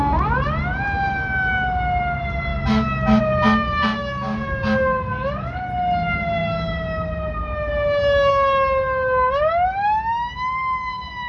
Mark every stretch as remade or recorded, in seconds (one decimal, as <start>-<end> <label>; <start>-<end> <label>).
0.0-11.3 recorded